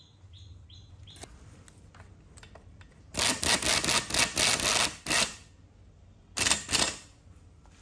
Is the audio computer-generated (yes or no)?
no